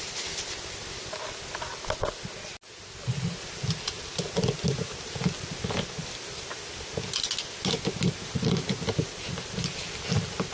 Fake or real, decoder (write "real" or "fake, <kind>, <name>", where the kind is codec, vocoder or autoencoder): real